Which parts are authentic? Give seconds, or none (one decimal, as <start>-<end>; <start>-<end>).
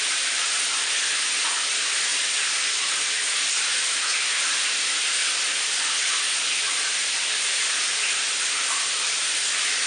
0.0-9.9